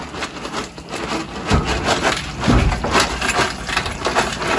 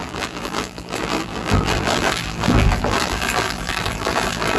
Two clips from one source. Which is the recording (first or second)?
first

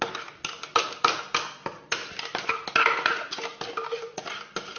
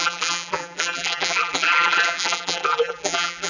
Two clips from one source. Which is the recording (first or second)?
first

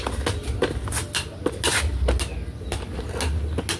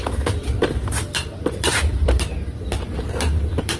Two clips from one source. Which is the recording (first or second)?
first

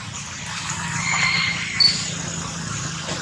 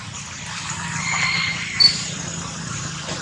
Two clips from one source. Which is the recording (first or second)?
first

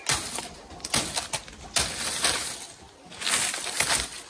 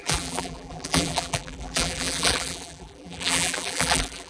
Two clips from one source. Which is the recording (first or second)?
first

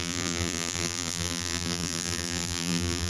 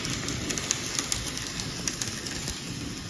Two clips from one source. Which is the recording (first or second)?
second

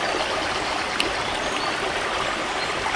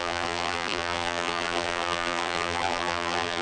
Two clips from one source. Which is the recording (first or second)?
first